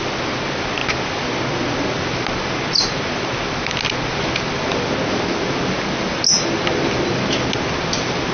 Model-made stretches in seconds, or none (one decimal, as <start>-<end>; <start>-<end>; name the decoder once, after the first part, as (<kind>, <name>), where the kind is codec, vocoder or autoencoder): none